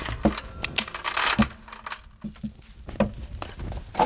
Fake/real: real